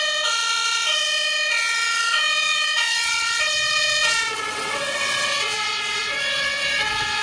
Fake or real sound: fake